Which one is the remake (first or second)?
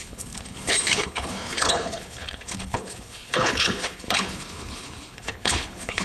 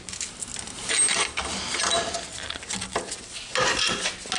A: first